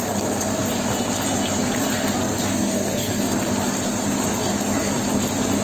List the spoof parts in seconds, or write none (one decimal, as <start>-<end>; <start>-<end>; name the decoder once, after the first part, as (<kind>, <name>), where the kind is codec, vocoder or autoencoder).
2.5-3.2 (codec, SNAC)